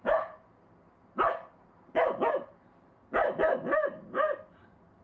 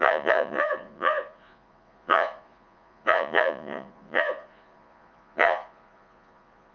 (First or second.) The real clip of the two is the first